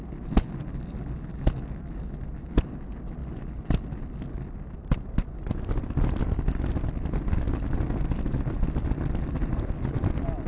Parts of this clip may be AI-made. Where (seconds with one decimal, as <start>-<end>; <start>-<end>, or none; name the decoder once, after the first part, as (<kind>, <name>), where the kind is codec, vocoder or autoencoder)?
9.4-10.1 (vocoder, BigVGAN v2)